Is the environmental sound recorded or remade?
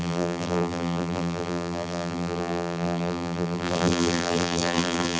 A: remade